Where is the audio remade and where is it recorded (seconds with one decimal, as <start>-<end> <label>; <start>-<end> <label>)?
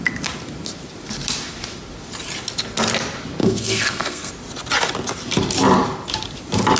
0.0-3.4 recorded; 3.4-4.3 remade; 4.3-6.8 recorded